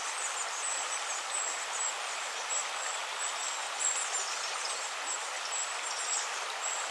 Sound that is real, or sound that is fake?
real